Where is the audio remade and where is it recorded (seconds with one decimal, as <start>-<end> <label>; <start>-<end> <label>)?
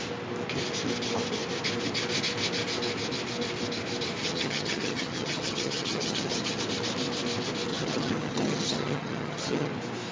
0.0-4.2 recorded; 4.2-6.6 remade; 6.6-7.7 recorded; 7.7-9.7 remade; 9.7-10.1 recorded